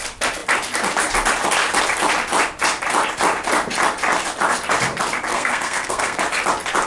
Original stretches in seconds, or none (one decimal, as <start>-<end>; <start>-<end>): 0.0-5.3; 6.2-6.9